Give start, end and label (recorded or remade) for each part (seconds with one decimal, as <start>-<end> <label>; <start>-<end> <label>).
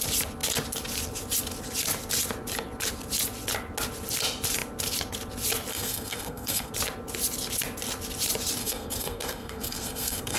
0.0-5.7 recorded; 5.7-6.7 remade; 6.7-8.6 recorded; 8.6-10.4 remade